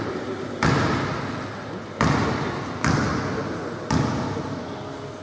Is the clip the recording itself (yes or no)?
yes